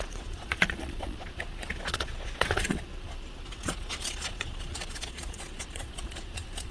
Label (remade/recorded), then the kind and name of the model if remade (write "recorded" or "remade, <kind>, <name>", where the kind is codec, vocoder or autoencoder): remade, vocoder, Vocos